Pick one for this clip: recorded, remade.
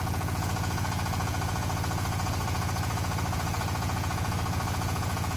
remade